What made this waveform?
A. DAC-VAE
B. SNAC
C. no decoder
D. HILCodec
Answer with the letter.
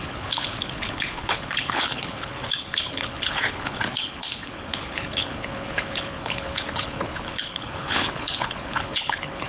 D